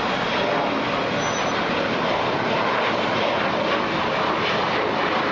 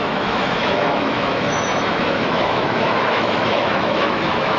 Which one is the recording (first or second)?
first